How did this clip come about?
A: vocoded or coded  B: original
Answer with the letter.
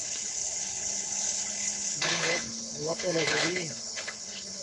A